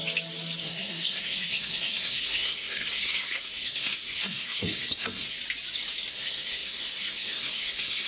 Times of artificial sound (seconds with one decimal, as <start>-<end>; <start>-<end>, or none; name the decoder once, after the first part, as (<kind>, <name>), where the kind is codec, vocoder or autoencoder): 0.6-5.4 (codec, SNAC); 6.1-8.1